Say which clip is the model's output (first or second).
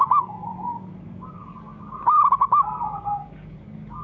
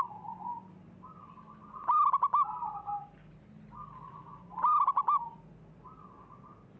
first